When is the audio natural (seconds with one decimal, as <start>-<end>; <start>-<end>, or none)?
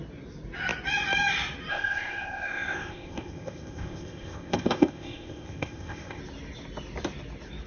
0.0-1.7; 6.2-7.7